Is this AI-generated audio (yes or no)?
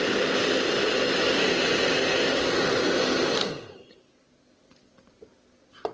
no